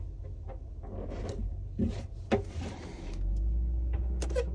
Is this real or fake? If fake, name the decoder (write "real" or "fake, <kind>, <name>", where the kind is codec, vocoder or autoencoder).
real